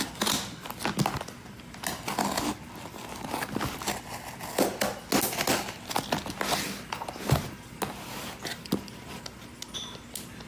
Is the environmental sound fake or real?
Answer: real